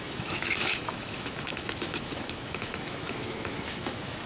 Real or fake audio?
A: fake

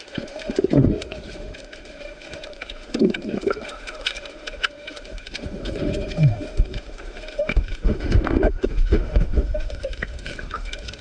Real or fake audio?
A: fake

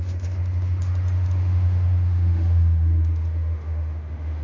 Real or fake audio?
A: fake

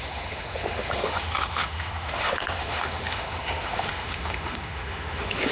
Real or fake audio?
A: fake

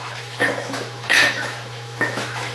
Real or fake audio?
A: fake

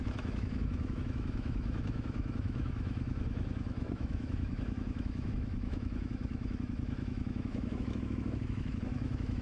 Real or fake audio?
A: fake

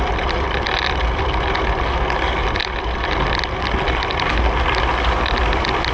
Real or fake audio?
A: real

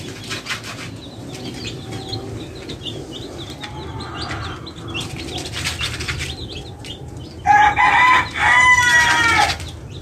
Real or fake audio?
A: real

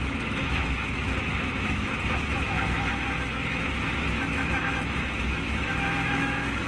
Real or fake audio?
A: fake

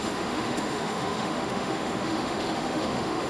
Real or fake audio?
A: fake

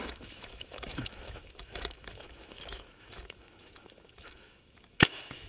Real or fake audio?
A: fake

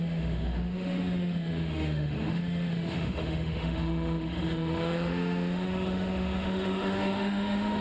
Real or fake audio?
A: fake